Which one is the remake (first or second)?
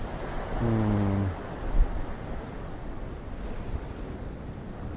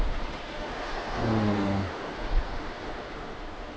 second